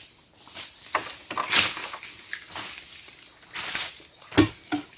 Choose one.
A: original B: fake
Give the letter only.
A